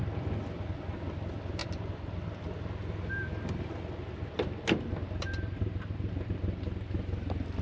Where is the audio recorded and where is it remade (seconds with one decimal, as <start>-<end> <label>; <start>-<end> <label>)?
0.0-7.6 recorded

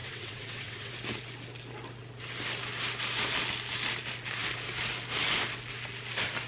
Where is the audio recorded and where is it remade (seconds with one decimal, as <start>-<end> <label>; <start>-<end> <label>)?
0.0-0.9 remade; 0.9-6.5 recorded

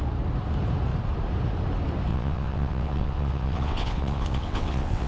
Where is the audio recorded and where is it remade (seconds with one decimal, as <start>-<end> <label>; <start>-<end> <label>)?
0.0-2.1 recorded; 2.1-5.1 remade